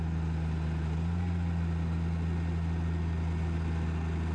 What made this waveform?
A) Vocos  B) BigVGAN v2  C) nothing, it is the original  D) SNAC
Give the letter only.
C